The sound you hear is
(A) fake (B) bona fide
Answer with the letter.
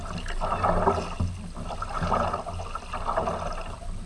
B